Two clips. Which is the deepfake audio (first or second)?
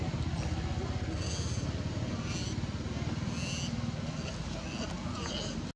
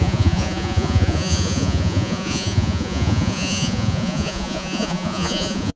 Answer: second